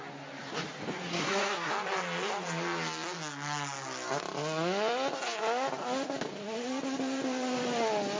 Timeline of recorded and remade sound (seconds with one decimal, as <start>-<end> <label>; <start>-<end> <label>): 0.0-1.1 recorded; 1.1-1.7 remade; 1.7-8.2 recorded

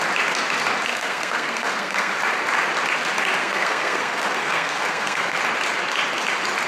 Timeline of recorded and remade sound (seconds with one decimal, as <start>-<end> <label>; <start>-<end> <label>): 0.0-0.9 recorded; 0.9-2.1 remade; 2.1-3.4 recorded; 3.4-5.4 remade; 5.4-6.7 recorded